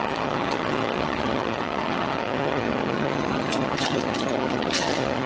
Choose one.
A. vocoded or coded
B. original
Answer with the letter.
A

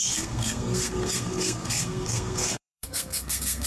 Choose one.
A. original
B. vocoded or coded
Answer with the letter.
B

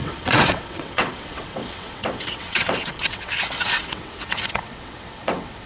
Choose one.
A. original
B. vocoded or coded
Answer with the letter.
B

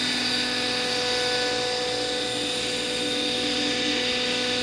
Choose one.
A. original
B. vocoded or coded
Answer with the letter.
A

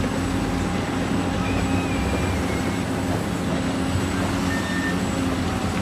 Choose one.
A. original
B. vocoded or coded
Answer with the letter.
A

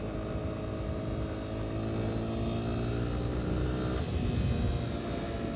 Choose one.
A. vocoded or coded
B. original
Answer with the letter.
B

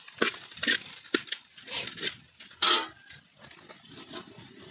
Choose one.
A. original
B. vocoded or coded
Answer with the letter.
A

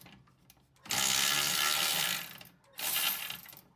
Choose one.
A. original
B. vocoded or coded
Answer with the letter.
A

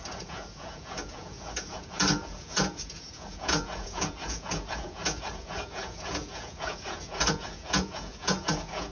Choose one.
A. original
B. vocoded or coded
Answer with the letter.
B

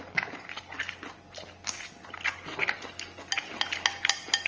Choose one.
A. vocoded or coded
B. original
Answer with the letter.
B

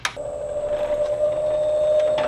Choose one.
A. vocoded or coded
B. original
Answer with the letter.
B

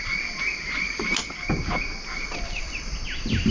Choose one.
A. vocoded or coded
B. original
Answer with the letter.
B